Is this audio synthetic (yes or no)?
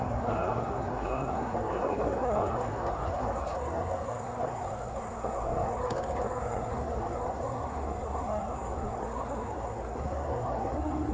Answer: yes